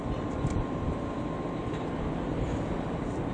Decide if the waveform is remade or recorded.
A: recorded